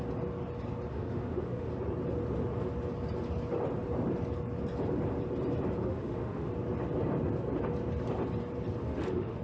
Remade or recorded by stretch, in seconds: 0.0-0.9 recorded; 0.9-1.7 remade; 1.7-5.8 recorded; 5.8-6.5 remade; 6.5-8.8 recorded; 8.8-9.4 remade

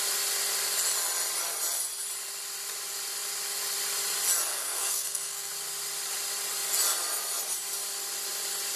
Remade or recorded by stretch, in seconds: 0.0-4.5 recorded; 4.5-5.5 remade; 5.5-8.8 recorded

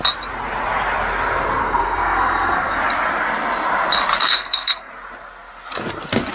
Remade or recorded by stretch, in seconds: 0.0-1.6 recorded; 1.6-2.8 remade; 2.8-4.2 recorded; 4.2-4.9 remade; 4.9-6.3 recorded

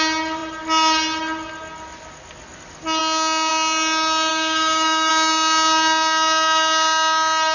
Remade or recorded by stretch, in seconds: 0.0-4.3 recorded; 4.3-5.1 remade; 5.1-7.5 recorded

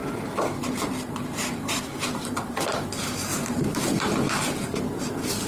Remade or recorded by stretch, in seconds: 0.0-0.7 recorded; 0.7-5.5 remade

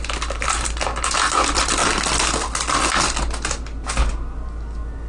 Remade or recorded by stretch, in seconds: 0.0-5.1 recorded